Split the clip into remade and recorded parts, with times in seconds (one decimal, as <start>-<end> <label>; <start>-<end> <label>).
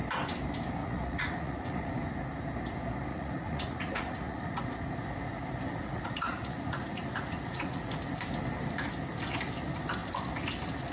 0.0-0.8 recorded; 0.8-1.9 remade; 1.9-3.1 recorded; 3.1-4.6 remade; 4.6-5.8 recorded; 5.8-7.8 remade; 7.8-10.9 recorded